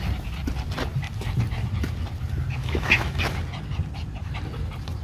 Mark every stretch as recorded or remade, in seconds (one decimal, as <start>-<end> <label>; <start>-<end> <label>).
0.0-2.6 recorded; 2.6-3.2 remade; 3.2-5.0 recorded